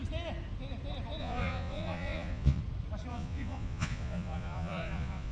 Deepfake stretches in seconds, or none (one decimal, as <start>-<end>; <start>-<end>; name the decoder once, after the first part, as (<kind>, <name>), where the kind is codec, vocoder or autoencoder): 1.2-2.6 (vocoder, Vocos); 3.1-5.3